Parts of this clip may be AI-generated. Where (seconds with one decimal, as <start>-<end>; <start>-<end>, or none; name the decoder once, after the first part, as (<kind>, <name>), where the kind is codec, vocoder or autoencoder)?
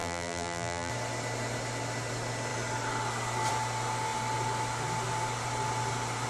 0.0-0.9 (vocoder, BigVGAN v2)